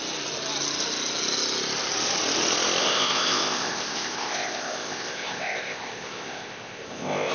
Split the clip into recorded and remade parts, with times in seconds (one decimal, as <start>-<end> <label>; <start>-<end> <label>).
0.0-2.8 recorded; 2.8-7.3 remade